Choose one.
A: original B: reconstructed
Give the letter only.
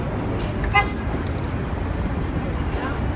A